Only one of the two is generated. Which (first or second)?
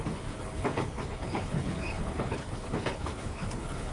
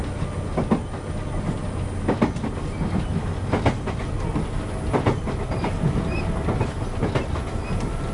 first